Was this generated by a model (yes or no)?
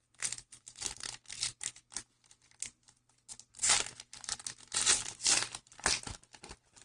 no